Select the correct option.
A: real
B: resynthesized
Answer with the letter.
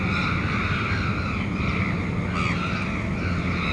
A